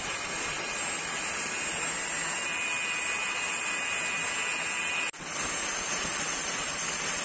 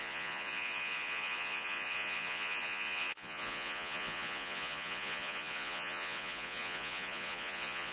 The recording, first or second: first